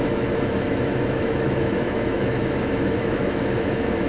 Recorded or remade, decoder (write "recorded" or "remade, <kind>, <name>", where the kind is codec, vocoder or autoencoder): remade, autoencoder, DAC-VAE